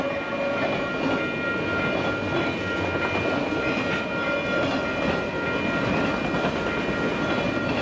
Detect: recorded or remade recorded